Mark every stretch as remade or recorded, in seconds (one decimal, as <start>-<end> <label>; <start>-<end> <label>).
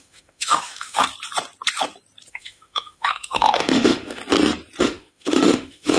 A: 0.0-1.0 remade; 1.0-2.3 recorded; 2.3-4.2 remade; 4.2-4.8 recorded; 4.8-6.0 remade